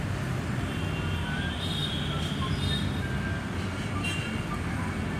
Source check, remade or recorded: recorded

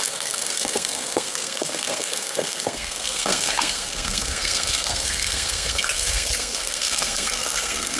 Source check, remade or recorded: remade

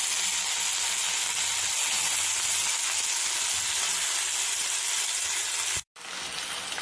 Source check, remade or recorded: recorded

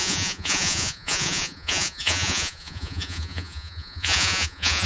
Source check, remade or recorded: remade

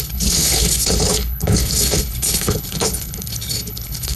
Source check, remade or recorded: remade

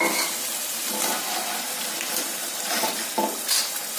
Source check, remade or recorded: recorded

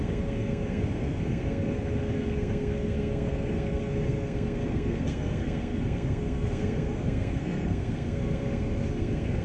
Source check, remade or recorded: remade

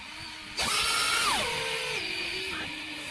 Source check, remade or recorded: recorded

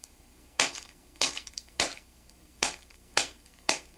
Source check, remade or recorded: remade